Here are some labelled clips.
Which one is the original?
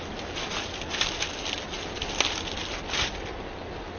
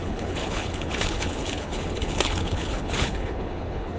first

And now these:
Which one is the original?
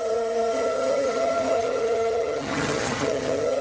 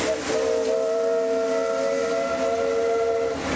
second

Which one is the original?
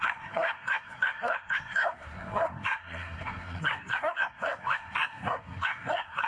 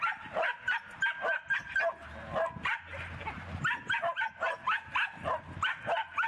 second